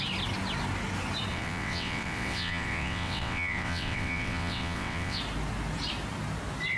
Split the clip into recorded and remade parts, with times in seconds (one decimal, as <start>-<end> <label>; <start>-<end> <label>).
0.0-1.3 recorded; 1.3-5.2 remade; 5.2-6.8 recorded